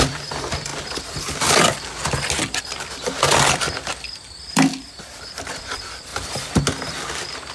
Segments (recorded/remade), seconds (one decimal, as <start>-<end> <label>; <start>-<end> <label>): 0.0-4.7 remade; 4.7-5.5 recorded; 5.5-7.5 remade